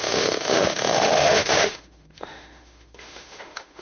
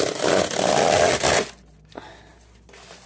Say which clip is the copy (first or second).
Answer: first